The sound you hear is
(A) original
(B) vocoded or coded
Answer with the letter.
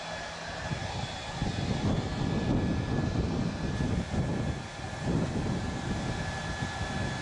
A